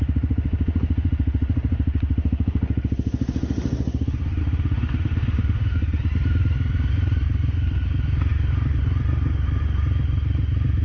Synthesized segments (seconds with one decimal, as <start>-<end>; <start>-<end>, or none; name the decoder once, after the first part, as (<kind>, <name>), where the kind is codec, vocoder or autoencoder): 4.4-5.8 (autoencoder, DAC-VAE)